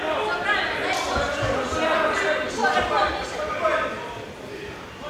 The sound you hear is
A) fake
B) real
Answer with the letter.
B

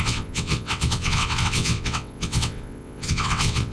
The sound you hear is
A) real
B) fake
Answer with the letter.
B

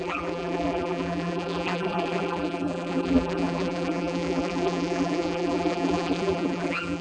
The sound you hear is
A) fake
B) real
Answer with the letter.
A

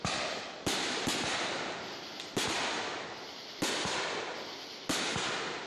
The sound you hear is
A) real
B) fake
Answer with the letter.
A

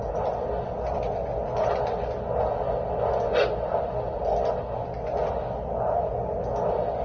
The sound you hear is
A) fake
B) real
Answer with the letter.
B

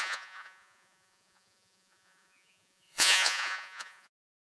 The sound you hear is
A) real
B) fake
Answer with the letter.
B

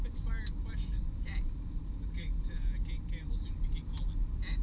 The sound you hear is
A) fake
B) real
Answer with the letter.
B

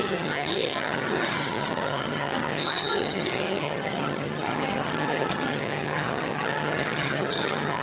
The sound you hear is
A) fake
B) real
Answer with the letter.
A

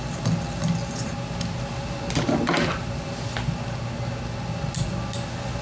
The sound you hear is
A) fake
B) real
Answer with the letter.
B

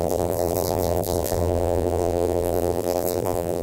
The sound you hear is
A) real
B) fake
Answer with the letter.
B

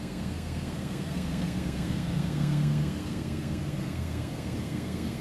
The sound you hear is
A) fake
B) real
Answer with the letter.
A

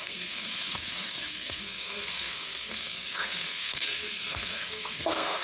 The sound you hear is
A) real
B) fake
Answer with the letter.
B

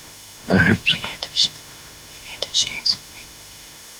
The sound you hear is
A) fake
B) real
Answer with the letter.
A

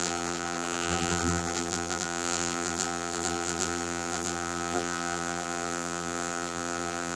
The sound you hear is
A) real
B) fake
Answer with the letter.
B